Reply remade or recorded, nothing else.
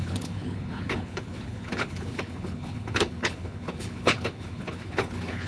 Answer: remade